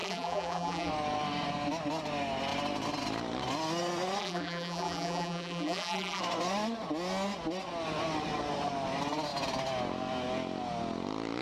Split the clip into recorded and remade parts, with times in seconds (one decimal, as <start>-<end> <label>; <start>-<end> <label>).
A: 0.0-0.9 remade; 0.9-4.2 recorded; 4.2-6.2 remade; 6.2-11.4 recorded